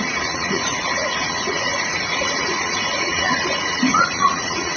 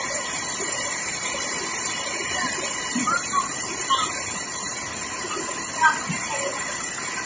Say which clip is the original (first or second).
second